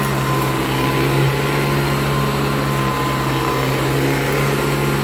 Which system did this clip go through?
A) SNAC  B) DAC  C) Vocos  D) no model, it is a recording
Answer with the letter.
D